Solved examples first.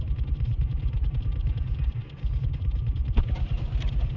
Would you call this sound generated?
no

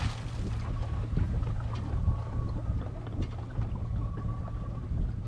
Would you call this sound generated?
no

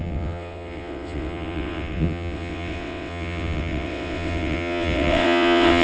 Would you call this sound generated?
yes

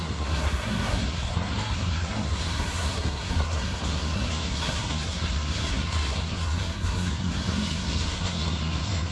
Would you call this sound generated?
yes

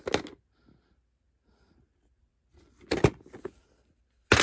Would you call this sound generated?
no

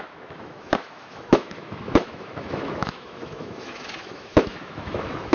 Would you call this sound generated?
yes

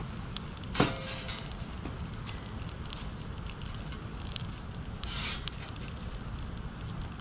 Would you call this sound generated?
no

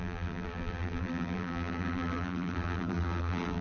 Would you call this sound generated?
yes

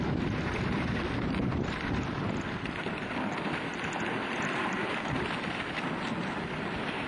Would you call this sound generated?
yes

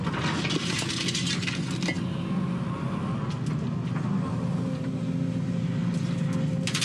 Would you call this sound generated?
no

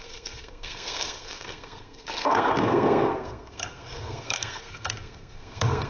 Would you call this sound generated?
yes